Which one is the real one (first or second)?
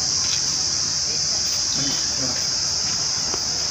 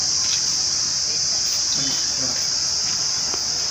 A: second